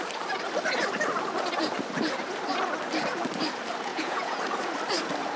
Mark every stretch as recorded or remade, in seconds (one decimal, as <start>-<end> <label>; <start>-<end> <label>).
0.0-3.9 recorded; 3.9-4.4 remade; 4.4-5.4 recorded